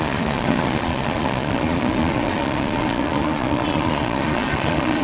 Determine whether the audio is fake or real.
fake